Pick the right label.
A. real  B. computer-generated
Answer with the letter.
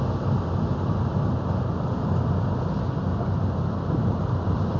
A